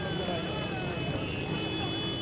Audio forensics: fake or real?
real